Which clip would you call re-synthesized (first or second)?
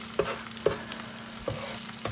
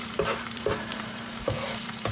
second